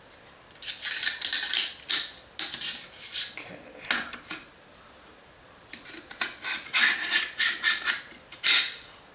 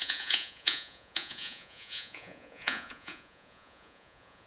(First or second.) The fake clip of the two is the second